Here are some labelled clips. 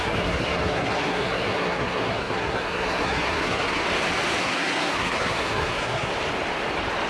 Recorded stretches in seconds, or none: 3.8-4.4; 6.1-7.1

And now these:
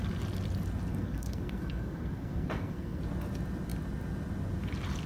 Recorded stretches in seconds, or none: 0.0-0.9; 3.0-5.1

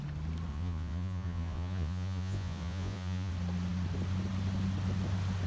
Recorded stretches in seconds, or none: 0.0-0.5; 3.3-5.5

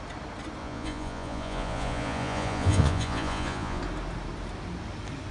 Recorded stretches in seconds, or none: 0.0-0.6; 3.8-5.3

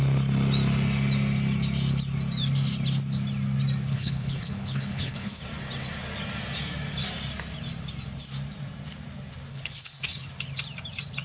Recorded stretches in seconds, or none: 0.0-3.9; 5.4-9.5; 10.3-11.2

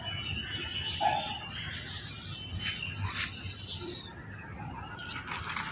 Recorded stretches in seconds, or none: 0.0-5.7

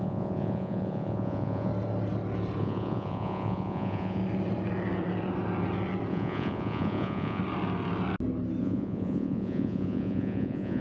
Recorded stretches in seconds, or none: 1.7-2.6; 4.2-6.1; 7.4-8.6

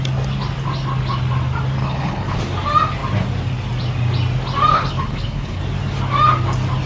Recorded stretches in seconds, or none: 0.0-1.8; 2.4-4.7; 5.6-6.9